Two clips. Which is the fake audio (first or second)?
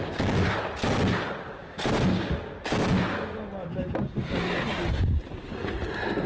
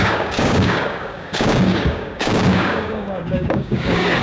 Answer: second